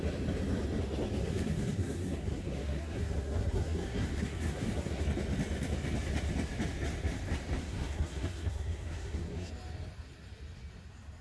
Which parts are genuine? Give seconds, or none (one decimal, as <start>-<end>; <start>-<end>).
0.0-1.2; 5.0-7.6; 9.5-11.2